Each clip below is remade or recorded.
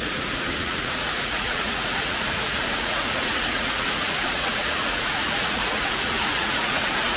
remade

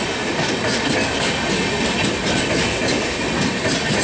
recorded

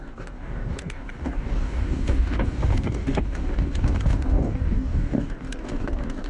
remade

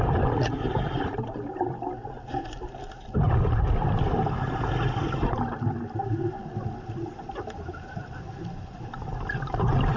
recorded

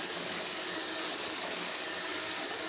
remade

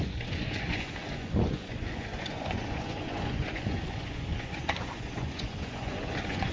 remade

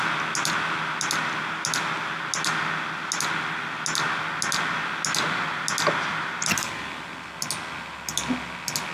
recorded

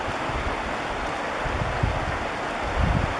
recorded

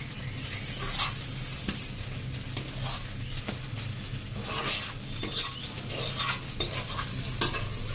recorded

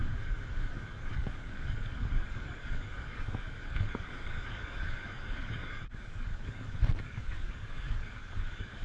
remade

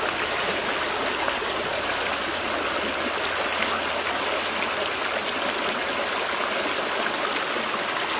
recorded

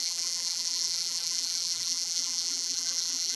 remade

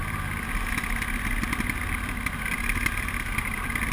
recorded